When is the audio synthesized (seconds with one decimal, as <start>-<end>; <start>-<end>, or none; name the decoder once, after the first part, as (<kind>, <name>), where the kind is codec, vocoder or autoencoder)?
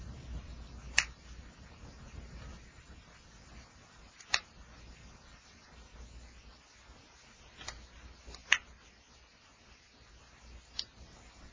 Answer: none